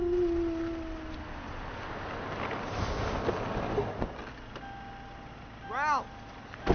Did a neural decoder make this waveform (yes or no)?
no